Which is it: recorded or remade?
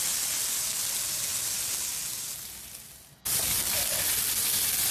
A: recorded